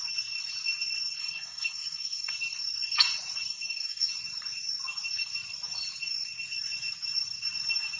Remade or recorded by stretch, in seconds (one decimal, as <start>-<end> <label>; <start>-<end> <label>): 0.0-1.2 recorded; 1.2-2.3 remade; 2.3-3.5 recorded; 3.5-4.1 remade; 4.1-8.0 recorded